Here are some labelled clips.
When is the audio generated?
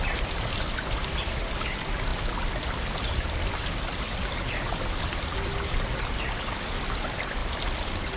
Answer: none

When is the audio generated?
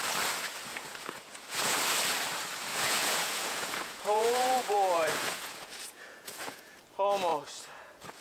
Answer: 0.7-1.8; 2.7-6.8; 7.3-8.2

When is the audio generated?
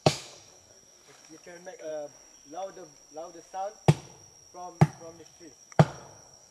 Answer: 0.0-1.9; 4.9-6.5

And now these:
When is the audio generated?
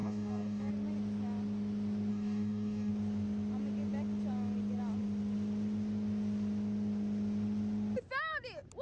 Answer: 0.0-0.7; 2.1-2.9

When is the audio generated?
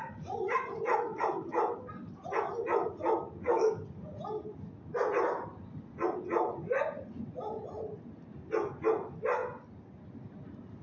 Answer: none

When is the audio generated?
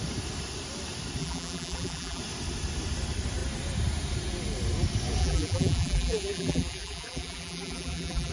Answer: 1.2-2.2; 5.2-8.3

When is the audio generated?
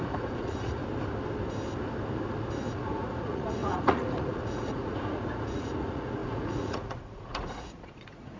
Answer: 0.0-0.8; 2.7-8.4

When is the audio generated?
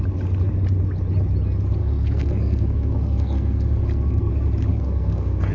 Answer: 1.8-4.3; 4.7-5.5